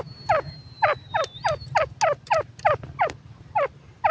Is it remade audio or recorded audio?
recorded